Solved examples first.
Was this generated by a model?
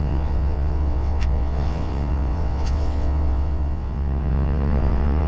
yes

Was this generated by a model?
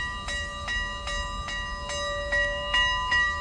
no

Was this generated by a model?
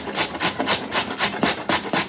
no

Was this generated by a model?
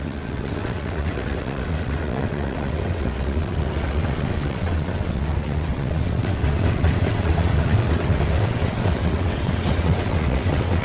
yes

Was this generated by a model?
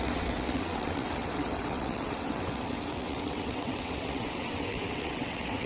yes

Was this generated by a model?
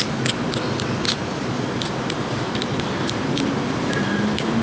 no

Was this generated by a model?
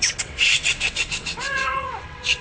yes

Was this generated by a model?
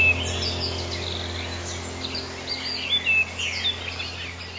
no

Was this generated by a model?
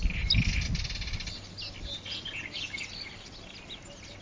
no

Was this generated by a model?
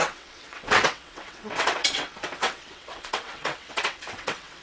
yes